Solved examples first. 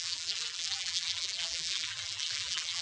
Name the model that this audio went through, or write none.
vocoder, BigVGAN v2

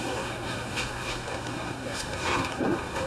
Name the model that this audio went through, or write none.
codec, SNAC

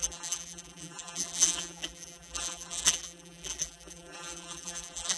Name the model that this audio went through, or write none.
vocoder, BigVGAN v2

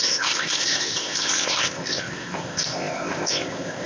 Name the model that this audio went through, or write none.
codec, ZipCodec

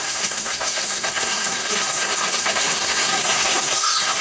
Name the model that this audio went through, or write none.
codec, SNAC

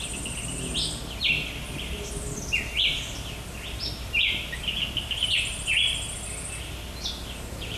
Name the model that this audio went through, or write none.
none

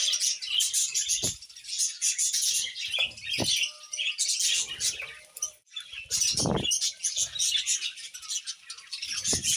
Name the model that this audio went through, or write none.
none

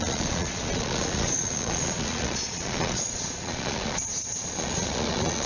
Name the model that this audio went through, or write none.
vocoder, Vocos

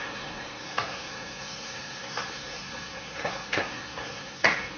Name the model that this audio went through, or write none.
codec, SNAC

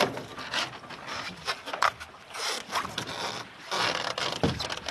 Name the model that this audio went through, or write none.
none